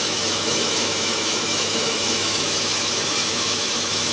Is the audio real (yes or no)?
no